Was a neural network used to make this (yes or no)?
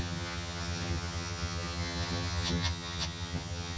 yes